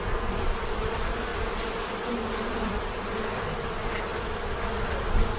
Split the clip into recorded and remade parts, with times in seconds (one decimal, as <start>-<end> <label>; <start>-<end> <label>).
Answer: 0.0-5.4 recorded